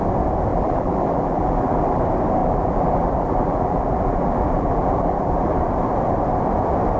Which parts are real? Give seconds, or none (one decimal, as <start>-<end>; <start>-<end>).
0.0-0.5; 2.0-2.4; 5.6-7.0